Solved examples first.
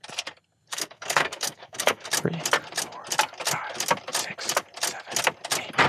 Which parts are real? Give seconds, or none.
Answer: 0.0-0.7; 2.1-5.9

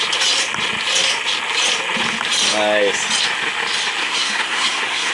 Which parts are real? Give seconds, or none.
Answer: 0.0-4.0

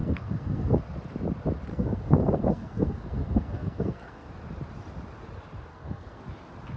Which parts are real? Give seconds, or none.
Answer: 0.8-1.7; 4.3-5.7; 6.2-6.8

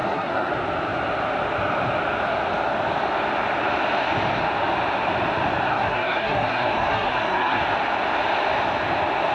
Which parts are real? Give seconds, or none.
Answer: 0.5-5.7; 7.6-9.3

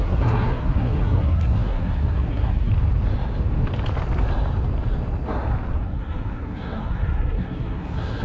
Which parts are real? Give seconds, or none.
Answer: 2.7-5.8

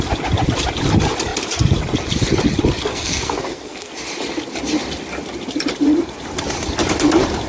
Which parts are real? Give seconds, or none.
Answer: 0.0-2.9; 3.9-7.5

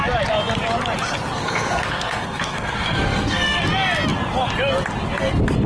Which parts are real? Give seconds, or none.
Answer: 0.0-1.4; 3.6-5.7

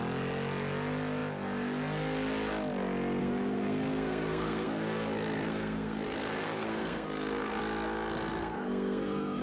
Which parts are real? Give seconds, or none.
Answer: 0.0-3.2; 7.6-8.4